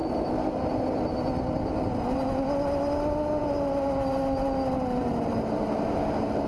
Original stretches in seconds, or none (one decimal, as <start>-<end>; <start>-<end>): 0.0-6.5